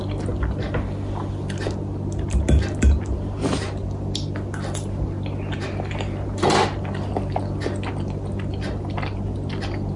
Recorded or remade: recorded